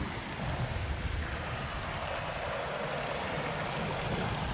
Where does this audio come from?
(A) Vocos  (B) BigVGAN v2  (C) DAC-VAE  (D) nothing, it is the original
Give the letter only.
D